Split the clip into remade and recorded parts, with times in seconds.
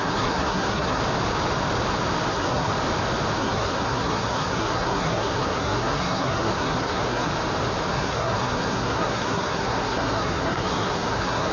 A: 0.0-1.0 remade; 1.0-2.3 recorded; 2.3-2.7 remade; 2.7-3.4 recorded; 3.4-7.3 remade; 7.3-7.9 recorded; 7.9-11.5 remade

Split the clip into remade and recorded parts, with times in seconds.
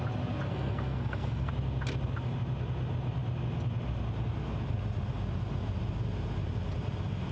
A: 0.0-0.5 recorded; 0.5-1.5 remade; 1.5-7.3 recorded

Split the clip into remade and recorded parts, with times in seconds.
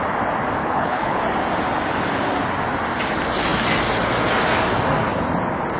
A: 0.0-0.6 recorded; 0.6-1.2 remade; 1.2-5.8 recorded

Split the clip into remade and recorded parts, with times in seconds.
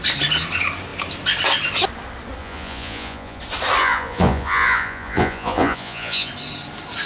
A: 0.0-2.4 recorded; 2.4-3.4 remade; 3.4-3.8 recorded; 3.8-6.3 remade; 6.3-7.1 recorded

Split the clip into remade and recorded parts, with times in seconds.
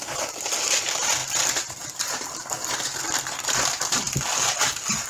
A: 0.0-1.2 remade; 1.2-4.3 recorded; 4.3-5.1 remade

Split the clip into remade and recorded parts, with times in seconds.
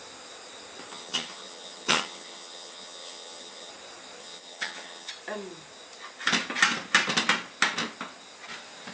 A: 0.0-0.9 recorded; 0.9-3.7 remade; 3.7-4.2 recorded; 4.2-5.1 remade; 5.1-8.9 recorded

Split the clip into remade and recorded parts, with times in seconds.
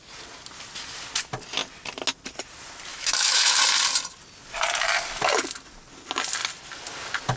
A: 0.0-2.9 recorded; 2.9-3.6 remade; 3.6-7.4 recorded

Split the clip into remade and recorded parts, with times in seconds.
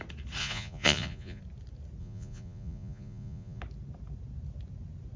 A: 0.0-0.4 recorded; 0.4-1.4 remade; 1.4-2.0 recorded; 2.0-3.6 remade; 3.6-5.2 recorded